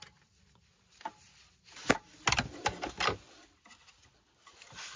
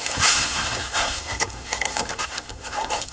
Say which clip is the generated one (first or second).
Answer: second